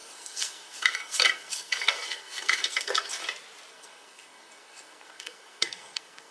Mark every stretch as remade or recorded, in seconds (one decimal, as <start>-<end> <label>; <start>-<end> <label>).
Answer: 0.0-3.2 remade; 3.2-3.7 recorded; 3.7-6.3 remade